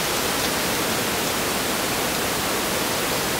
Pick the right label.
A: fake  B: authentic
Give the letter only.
B